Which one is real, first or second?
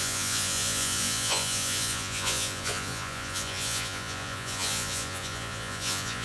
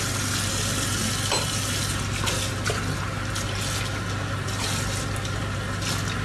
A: second